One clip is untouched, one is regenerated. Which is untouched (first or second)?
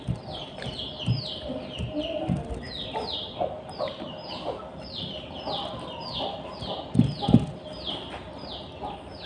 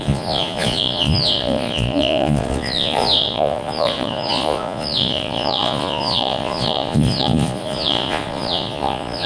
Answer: first